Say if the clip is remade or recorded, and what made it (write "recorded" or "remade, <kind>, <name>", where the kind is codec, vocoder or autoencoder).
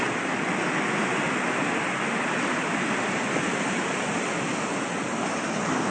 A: recorded